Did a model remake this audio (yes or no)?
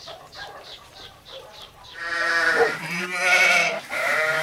yes